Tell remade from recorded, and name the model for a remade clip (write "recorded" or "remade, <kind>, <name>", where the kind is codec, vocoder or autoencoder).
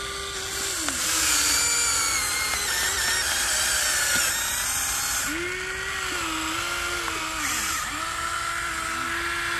recorded